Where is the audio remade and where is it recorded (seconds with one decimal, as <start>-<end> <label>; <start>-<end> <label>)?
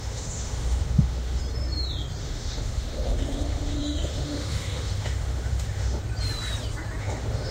0.0-1.4 remade; 1.4-2.2 recorded; 2.2-6.0 remade; 6.0-7.0 recorded; 7.0-7.5 remade